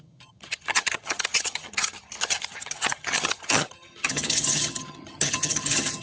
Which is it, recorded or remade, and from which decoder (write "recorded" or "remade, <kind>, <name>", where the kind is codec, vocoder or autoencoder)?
remade, vocoder, HiFi-GAN